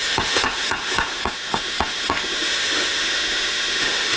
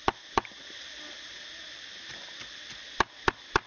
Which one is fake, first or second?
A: first